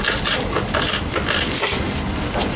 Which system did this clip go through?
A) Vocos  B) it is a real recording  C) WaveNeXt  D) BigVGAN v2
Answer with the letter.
B